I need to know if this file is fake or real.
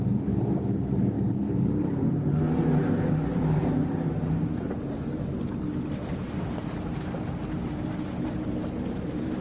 fake